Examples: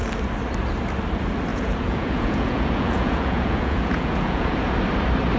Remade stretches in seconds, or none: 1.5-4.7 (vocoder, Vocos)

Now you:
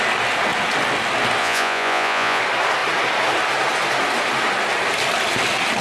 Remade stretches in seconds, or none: 1.4-2.4 (vocoder, Vocos)

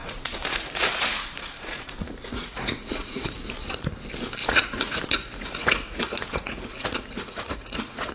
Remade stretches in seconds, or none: 0.0-3.4 (vocoder, Vocos); 4.4-8.1

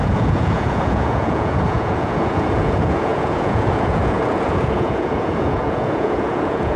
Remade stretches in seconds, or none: 0.0-6.8 (vocoder, Vocos)